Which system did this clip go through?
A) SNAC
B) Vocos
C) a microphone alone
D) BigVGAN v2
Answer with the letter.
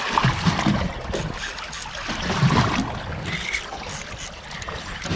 C